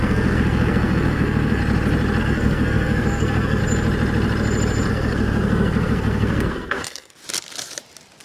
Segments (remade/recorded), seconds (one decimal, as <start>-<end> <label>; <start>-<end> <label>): 0.0-1.6 remade; 1.6-2.2 recorded; 2.2-3.6 remade; 3.6-4.9 recorded; 4.9-7.2 remade; 7.2-8.2 recorded